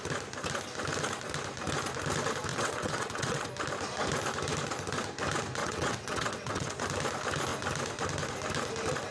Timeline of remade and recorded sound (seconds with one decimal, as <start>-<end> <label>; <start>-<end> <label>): 0.0-2.5 recorded; 2.5-3.5 remade; 3.5-5.6 recorded; 5.6-6.7 remade; 6.7-9.1 recorded

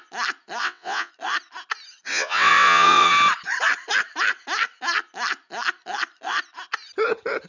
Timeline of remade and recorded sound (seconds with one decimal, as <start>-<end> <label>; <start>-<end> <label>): 0.0-0.6 recorded; 0.6-1.1 remade; 1.1-2.1 recorded; 2.1-3.1 remade; 3.1-7.5 recorded